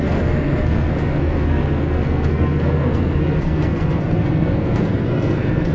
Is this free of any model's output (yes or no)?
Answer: no